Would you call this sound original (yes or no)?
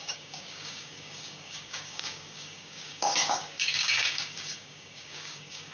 no